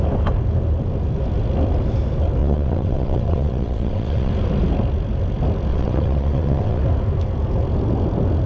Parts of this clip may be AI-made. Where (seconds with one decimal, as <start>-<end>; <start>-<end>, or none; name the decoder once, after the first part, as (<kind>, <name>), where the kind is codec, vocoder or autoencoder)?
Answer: 2.4-4.3 (vocoder, WaveNeXt); 5.7-6.8